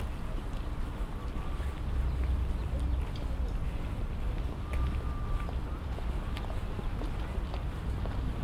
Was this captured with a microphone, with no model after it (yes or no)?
yes